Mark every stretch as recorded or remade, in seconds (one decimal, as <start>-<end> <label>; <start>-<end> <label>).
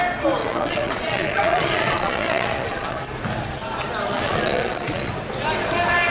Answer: 0.0-0.4 recorded; 0.4-3.0 remade; 3.0-4.1 recorded; 4.1-5.1 remade; 5.1-6.1 recorded